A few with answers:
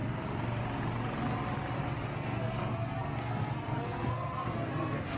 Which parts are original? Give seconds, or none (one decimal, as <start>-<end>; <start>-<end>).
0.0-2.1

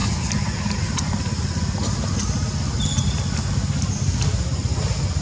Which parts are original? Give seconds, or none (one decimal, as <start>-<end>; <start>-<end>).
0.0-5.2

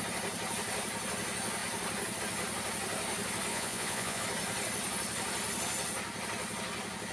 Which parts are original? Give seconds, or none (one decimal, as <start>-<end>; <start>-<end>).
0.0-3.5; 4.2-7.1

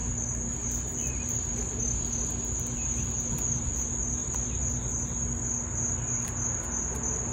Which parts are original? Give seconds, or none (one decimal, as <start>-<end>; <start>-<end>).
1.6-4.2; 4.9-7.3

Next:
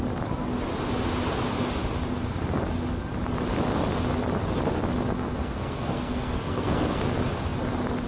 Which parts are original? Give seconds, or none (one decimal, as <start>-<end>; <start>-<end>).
0.0-5.4; 7.0-8.1